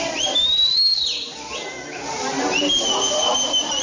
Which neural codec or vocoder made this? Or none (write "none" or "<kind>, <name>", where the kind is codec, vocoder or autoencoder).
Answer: none